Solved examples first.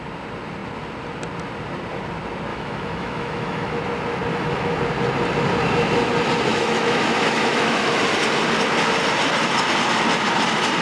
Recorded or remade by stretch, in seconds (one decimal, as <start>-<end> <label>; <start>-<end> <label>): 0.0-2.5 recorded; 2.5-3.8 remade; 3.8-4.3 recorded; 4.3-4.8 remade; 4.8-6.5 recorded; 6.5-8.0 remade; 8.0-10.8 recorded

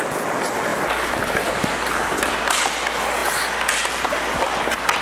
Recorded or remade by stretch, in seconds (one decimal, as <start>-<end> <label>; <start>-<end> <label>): 0.0-0.7 recorded; 0.7-2.3 remade; 2.3-5.0 recorded

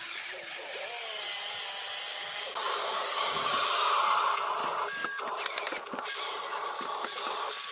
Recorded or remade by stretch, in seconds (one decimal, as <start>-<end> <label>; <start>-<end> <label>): 0.0-2.1 recorded; 2.1-3.9 remade; 3.9-7.7 recorded

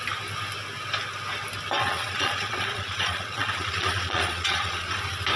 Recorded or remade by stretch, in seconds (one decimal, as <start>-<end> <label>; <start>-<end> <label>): 0.0-1.8 recorded; 1.8-5.0 remade; 5.0-5.4 recorded

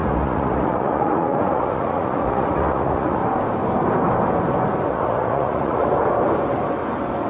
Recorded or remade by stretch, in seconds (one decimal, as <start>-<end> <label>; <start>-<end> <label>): 0.0-3.2 remade; 3.2-4.9 recorded; 4.9-5.9 remade; 5.9-7.3 recorded

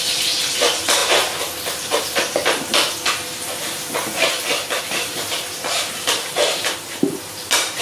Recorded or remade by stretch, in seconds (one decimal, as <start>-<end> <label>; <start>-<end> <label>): 0.0-1.0 remade; 1.0-4.8 recorded; 4.8-7.8 remade

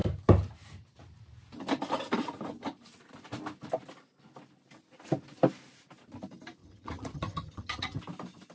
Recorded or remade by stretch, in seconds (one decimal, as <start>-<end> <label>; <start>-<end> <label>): 0.0-6.6 recorded; 6.6-8.0 remade; 8.0-8.5 recorded

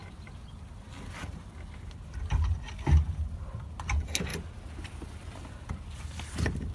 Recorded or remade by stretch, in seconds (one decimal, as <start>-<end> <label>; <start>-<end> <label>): 0.0-0.6 remade; 0.6-6.7 recorded